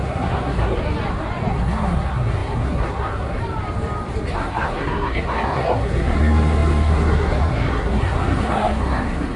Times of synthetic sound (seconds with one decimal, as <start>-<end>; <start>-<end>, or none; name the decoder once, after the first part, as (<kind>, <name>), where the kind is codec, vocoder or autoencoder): 0.0-0.8 (codec, SNAC); 1.5-3.4; 4.3-9.4